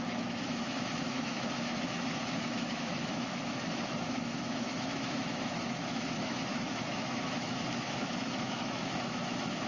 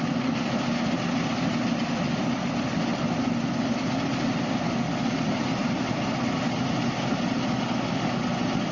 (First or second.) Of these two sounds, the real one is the second